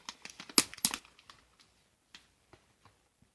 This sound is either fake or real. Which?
real